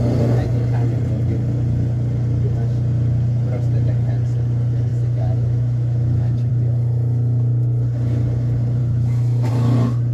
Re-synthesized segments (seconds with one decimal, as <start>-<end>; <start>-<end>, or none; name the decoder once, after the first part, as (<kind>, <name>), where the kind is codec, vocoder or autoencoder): 4.9-6.5 (autoencoder, DAC-VAE); 8.8-9.5